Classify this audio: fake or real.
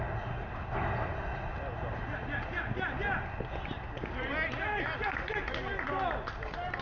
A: real